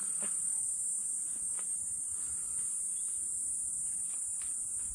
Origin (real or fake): real